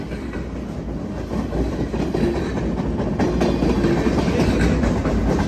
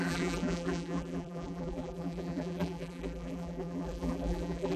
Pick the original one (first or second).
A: first